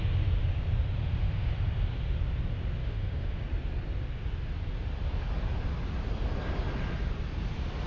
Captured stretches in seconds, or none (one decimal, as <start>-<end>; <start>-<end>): 0.0-1.0; 1.5-2.8; 3.4-7.9